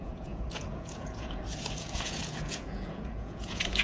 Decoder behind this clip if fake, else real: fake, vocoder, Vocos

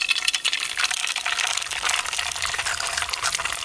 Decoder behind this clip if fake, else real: real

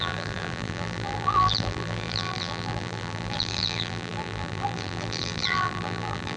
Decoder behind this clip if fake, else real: fake, vocoder, BigVGAN v2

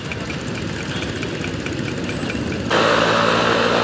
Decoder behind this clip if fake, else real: real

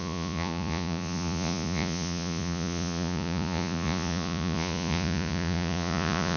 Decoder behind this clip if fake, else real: fake, vocoder, Vocos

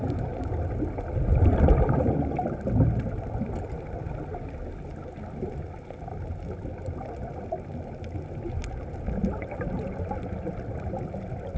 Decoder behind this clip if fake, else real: real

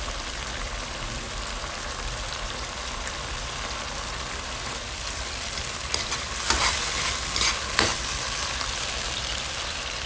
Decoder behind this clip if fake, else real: fake, vocoder, BigVGAN v2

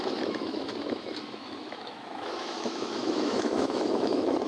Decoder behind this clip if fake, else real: fake, autoencoder, DAC-VAE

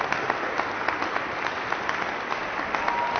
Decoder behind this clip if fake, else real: real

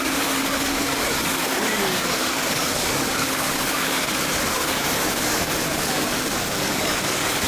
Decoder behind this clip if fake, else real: fake, codec, DAC